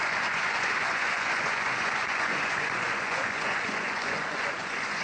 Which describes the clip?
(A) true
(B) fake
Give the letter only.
B